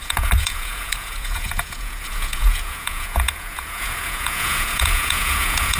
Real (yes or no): no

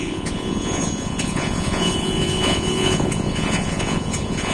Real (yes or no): no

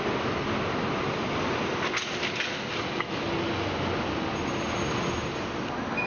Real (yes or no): yes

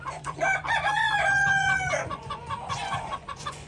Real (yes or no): no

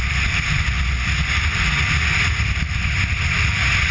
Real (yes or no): yes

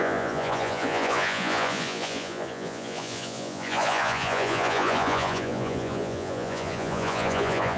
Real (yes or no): no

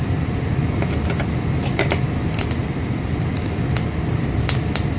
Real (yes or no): yes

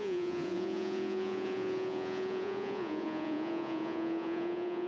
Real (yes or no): no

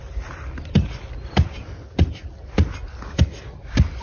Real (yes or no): yes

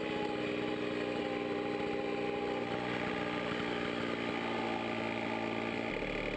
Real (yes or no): yes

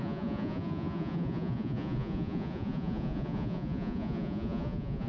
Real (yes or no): no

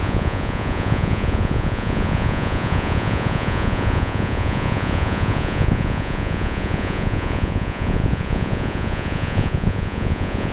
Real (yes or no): no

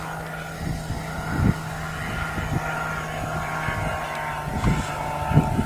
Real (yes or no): yes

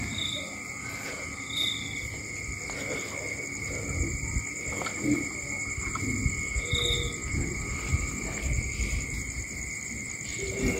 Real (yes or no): yes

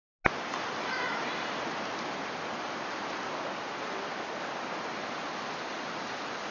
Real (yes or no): yes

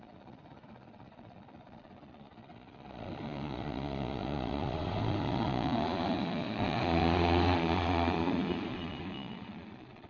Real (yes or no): no